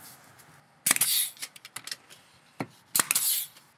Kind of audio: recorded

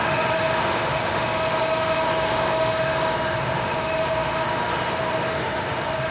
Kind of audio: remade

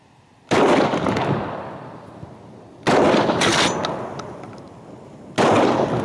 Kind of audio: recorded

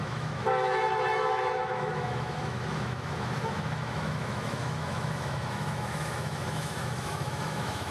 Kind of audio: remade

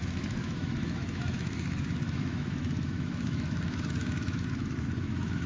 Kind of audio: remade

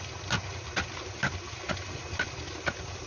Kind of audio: recorded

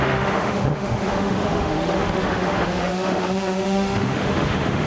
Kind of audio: remade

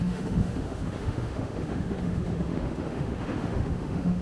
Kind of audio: remade